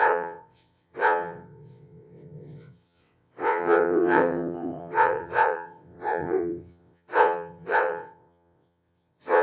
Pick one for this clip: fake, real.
fake